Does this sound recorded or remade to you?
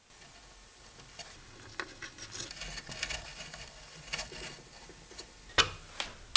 recorded